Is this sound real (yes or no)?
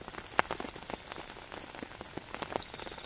yes